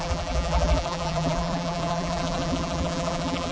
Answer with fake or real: fake